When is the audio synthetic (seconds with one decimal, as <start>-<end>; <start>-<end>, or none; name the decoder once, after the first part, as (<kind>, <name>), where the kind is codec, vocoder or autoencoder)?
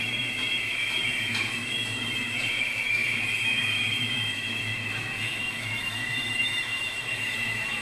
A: 0.0-7.8 (autoencoder, DAC-VAE)